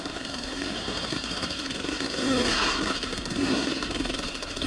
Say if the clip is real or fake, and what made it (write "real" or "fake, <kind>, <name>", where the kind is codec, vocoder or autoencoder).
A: fake, codec, SNAC